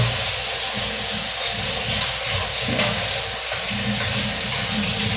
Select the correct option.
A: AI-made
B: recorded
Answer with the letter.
B